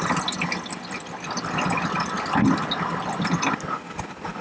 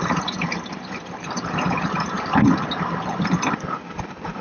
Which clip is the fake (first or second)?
second